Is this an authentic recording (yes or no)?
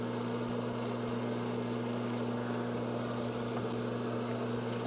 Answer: yes